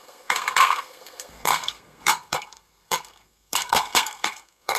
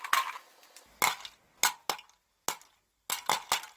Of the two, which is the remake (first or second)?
first